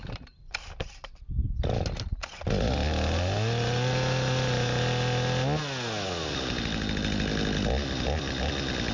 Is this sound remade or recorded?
recorded